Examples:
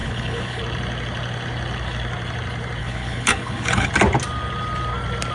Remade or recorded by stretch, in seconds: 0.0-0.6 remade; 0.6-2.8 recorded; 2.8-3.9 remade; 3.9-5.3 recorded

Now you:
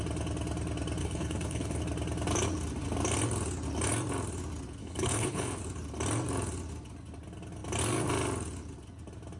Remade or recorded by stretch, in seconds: 0.0-1.0 recorded; 1.0-1.8 remade; 1.8-4.8 recorded; 4.8-5.6 remade; 5.6-9.4 recorded

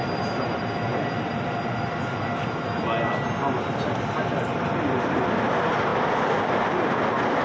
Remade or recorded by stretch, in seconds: 0.0-7.4 recorded

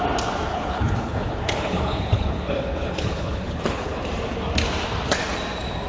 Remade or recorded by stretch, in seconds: 0.0-0.5 recorded; 0.5-4.0 remade; 4.0-5.9 recorded

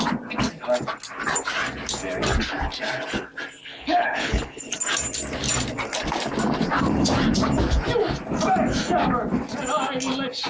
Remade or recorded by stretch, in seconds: 0.0-3.6 recorded; 3.6-4.7 remade; 4.7-10.5 recorded

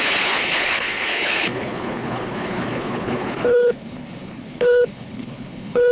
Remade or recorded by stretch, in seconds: 0.0-5.9 remade

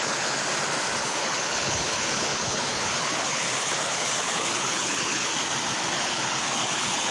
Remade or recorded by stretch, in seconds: 0.0-0.4 remade; 0.4-1.0 recorded; 1.0-5.3 remade; 5.3-5.9 recorded; 5.9-7.1 remade